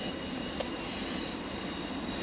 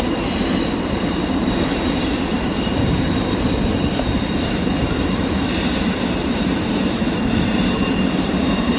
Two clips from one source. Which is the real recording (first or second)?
first